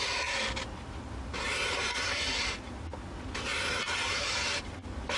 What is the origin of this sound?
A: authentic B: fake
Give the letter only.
A